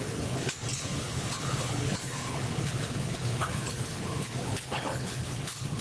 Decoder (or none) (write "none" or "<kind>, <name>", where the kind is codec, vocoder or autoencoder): codec, HILCodec